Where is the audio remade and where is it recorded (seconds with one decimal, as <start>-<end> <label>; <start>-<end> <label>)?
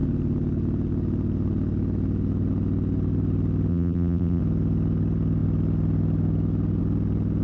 0.0-3.7 recorded; 3.7-4.4 remade; 4.4-7.4 recorded